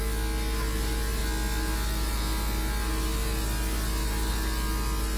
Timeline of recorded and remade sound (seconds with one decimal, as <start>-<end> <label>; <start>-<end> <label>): 0.0-5.2 recorded

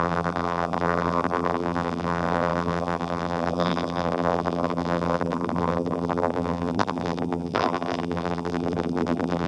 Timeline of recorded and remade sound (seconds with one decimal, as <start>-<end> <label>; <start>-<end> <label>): 0.0-9.5 remade